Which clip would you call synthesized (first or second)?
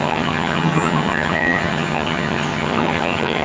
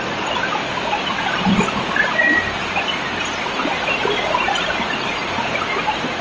first